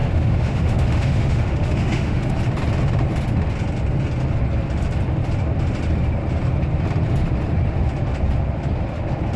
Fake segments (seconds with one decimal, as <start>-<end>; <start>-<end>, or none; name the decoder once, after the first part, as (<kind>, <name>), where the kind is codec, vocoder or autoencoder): 0.0-2.3 (autoencoder, DAC-VAE)